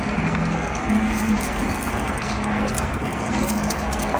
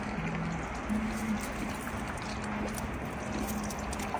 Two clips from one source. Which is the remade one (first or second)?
first